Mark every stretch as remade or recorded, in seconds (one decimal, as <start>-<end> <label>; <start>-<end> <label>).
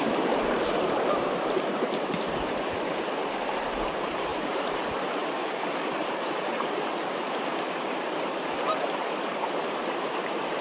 0.0-10.6 remade